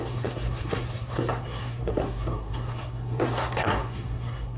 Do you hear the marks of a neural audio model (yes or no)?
yes